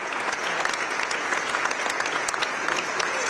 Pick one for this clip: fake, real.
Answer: fake